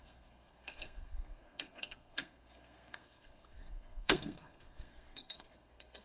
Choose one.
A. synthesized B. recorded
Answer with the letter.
A